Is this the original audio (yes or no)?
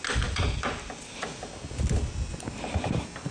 yes